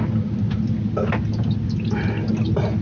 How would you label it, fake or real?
real